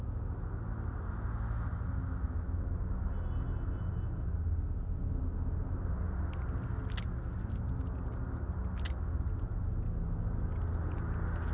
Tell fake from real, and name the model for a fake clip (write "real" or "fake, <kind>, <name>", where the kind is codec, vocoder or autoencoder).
real